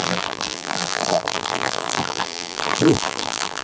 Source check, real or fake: fake